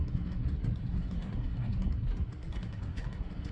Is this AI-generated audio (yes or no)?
yes